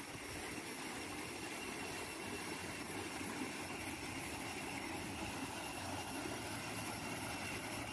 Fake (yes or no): no